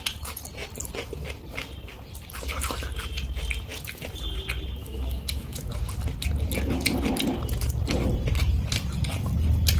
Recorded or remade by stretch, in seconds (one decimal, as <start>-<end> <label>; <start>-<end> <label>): 0.0-4.8 recorded; 4.8-5.7 remade; 5.7-9.8 recorded